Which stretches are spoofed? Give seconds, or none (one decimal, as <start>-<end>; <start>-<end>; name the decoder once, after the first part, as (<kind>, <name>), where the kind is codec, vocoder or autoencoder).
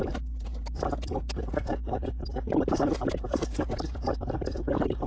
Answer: none